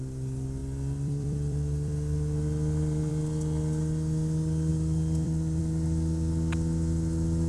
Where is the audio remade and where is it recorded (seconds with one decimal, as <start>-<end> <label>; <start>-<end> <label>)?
0.0-0.6 recorded; 0.6-3.1 remade; 3.1-4.7 recorded; 4.7-5.6 remade; 5.6-7.5 recorded